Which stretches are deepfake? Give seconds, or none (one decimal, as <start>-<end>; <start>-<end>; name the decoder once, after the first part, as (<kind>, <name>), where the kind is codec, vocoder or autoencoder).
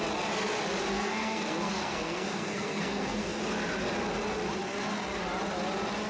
0.9-3.4 (codec, SNAC)